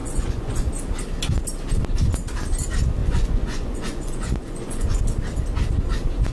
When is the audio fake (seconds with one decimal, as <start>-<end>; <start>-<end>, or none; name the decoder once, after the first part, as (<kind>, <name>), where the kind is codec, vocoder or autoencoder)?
0.0-0.7 (vocoder, Vocos); 3.0-5.0